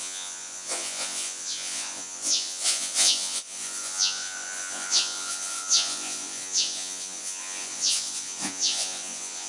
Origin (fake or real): fake